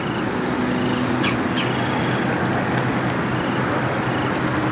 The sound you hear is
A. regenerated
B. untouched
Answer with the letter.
B